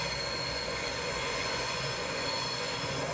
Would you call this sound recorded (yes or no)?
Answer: no